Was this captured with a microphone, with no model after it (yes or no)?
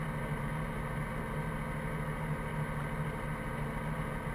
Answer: yes